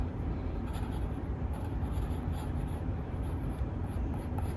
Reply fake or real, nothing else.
fake